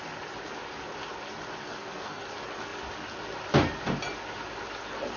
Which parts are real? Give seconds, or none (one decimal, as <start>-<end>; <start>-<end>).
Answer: 0.0-1.6; 2.2-5.2